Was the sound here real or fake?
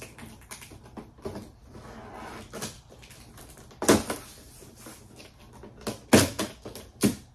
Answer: real